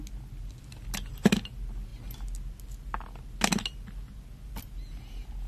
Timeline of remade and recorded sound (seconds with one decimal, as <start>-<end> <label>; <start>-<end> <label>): 0.0-5.5 recorded